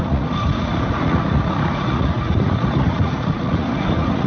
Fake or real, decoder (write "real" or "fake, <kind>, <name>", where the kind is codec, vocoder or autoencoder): fake, vocoder, Vocos